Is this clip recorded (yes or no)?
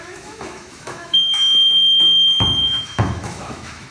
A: no